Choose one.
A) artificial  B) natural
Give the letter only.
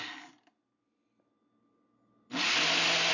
B